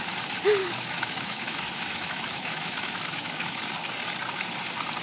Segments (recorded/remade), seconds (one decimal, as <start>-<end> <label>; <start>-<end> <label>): 0.0-0.6 recorded; 0.6-3.6 remade; 3.6-5.0 recorded